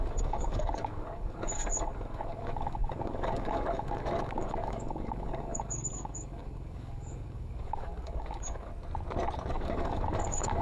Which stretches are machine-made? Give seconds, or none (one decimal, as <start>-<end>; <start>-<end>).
0.0-8.7; 9.5-10.6